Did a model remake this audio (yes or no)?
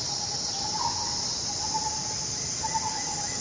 no